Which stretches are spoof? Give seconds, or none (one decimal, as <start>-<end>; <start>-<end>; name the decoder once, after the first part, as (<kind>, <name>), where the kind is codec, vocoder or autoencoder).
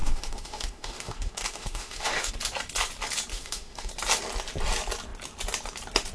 0.0-2.3 (autoencoder, DAC-VAE); 3.3-3.9